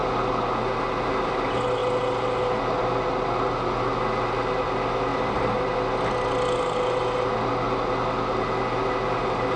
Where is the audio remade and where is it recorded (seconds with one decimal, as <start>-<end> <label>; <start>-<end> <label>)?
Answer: 0.0-9.6 recorded